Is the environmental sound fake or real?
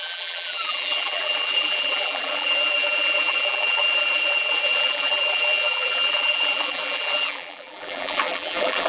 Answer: fake